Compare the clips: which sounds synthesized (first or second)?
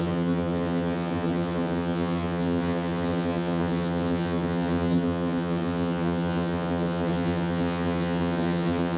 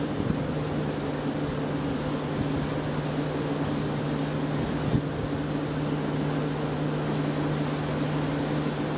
first